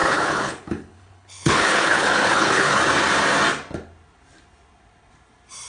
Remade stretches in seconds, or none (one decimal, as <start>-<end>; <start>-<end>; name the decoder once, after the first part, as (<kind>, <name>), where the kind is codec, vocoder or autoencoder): 0.0-2.8 (codec, HILCodec)